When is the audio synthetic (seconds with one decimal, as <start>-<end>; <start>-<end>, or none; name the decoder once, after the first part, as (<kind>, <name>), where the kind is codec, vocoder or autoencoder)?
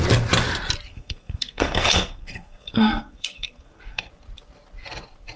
0.9-4.1 (codec, SNAC)